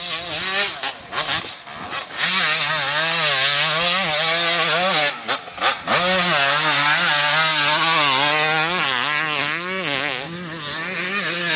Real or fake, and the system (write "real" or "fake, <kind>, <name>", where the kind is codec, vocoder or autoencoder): real